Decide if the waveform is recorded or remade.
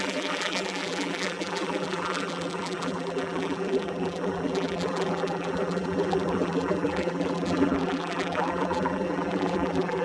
remade